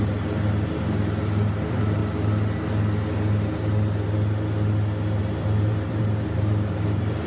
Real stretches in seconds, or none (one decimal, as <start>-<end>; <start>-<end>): 2.0-5.2